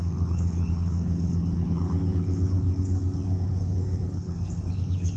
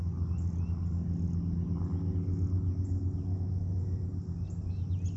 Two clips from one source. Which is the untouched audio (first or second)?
second